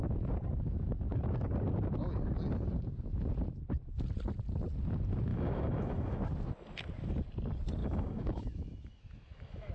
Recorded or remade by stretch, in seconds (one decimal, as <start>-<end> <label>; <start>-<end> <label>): 0.0-5.3 recorded; 5.3-6.2 remade; 6.2-7.8 recorded; 7.8-9.7 remade

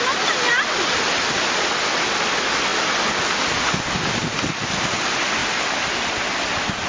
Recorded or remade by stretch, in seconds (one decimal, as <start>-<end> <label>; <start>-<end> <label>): 0.0-6.9 recorded

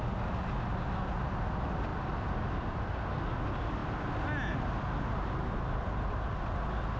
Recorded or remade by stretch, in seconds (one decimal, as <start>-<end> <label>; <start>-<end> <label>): 0.0-7.0 recorded

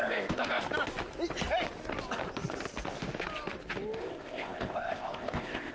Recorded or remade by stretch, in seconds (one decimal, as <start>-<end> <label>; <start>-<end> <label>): 0.0-0.6 remade; 0.6-4.0 recorded; 4.0-5.7 remade

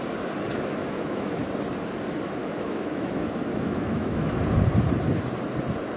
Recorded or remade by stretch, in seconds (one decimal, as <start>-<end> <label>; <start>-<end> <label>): 0.0-0.8 recorded; 0.8-1.5 remade; 1.5-2.4 recorded; 2.4-4.4 remade; 4.4-6.0 recorded